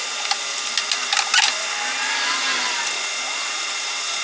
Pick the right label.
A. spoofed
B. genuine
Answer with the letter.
B